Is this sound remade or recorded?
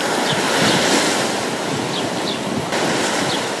recorded